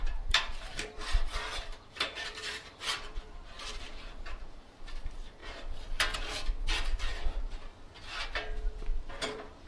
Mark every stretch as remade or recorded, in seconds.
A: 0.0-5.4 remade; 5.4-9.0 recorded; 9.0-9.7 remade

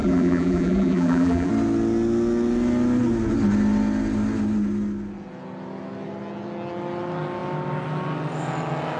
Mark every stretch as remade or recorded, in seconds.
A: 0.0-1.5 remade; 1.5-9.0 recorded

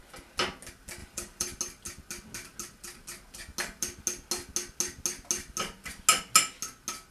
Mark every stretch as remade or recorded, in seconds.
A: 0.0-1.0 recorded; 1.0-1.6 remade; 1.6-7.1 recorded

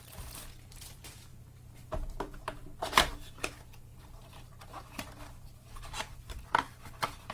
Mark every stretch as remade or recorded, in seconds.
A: 0.0-2.6 remade; 2.6-3.4 recorded; 3.4-7.3 remade